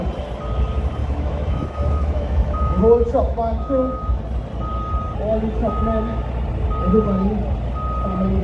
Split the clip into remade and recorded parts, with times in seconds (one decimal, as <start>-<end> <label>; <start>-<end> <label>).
0.0-1.0 recorded; 1.0-4.2 remade; 4.2-5.6 recorded; 5.6-6.2 remade; 6.2-8.4 recorded